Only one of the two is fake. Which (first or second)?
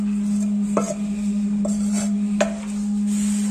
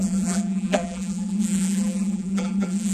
second